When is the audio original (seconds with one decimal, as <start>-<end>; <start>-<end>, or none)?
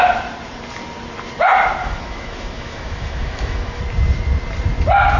0.0-1.8; 3.8-5.2